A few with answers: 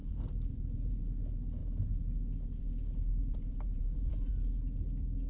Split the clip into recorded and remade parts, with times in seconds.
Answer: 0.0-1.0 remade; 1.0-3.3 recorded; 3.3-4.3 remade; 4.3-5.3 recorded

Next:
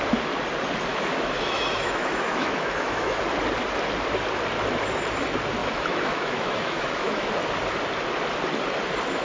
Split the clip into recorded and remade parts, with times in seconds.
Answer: 0.0-0.9 recorded; 0.9-3.2 remade; 3.2-5.6 recorded; 5.6-7.3 remade; 7.3-9.2 recorded

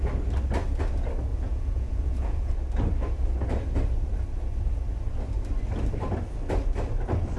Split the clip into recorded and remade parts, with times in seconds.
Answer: 0.0-1.3 recorded; 1.3-2.5 remade; 2.5-7.4 recorded

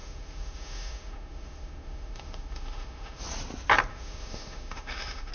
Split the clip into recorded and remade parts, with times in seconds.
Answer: 0.0-3.2 remade; 3.2-3.9 recorded; 3.9-5.3 remade

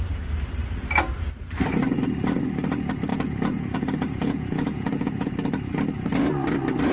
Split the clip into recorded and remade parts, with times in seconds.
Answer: 0.0-3.1 recorded; 3.1-5.3 remade; 5.3-6.9 recorded